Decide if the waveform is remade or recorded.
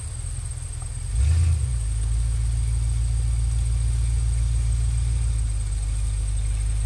recorded